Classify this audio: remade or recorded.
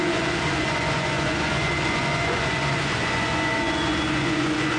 remade